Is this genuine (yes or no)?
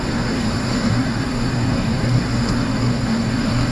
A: no